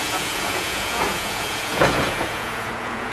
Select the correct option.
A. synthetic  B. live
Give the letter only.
A